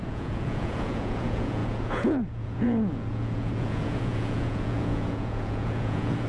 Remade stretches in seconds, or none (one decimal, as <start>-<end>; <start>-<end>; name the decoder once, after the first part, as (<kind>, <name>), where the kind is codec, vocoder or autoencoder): 0.0-6.3 (vocoder, Vocos)